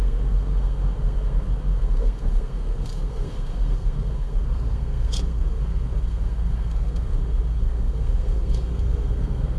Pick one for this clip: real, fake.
fake